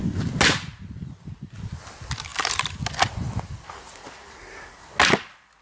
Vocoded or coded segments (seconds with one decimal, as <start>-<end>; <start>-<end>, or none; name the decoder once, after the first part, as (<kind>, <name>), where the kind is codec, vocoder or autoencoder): none